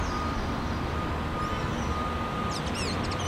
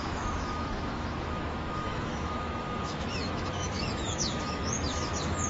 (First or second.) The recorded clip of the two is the first